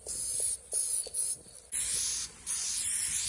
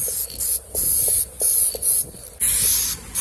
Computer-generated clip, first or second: first